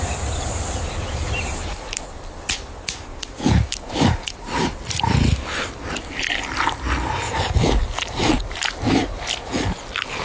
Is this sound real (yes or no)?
yes